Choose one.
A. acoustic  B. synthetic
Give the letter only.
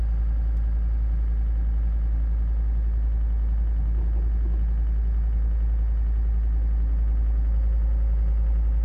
A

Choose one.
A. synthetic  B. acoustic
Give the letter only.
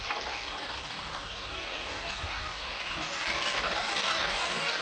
A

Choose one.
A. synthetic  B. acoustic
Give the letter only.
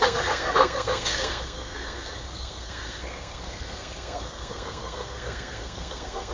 A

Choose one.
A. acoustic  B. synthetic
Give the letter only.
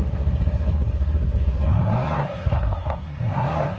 B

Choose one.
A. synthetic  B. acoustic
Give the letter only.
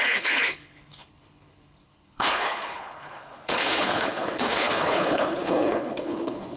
A